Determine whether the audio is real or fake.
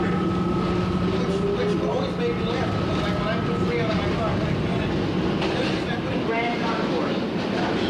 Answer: real